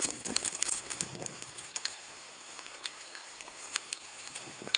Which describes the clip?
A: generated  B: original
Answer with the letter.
A